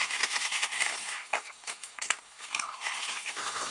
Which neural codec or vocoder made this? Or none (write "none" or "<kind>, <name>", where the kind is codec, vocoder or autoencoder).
codec, SNAC